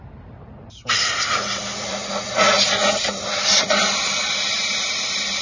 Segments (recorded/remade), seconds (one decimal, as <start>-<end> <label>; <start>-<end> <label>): 0.0-2.0 remade; 2.0-5.4 recorded

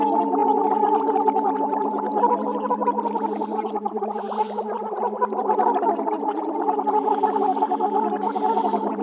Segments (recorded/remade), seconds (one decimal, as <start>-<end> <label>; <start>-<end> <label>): 0.0-9.0 recorded

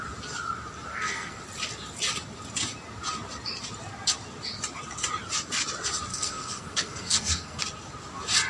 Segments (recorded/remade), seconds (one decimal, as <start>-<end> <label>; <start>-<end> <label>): 0.0-0.9 recorded; 0.9-1.4 remade; 1.4-6.1 recorded; 6.1-7.6 remade; 7.6-8.5 recorded

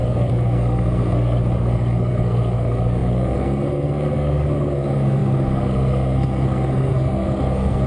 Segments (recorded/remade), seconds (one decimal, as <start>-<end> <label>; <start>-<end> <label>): 0.0-7.9 remade